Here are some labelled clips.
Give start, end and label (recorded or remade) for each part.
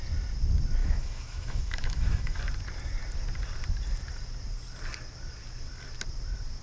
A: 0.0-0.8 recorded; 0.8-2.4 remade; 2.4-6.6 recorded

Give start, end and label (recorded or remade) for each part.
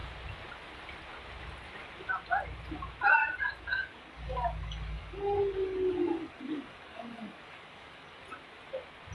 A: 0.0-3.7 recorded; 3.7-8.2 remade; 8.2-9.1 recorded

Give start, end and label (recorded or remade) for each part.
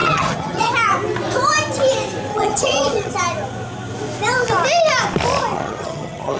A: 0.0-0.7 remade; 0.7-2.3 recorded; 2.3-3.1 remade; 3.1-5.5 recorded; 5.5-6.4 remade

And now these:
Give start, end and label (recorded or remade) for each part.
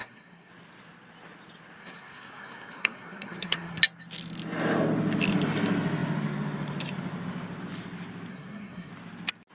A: 0.0-0.5 remade; 0.5-1.8 recorded; 1.8-3.8 remade; 3.8-8.3 recorded; 8.3-8.9 remade; 8.9-9.5 recorded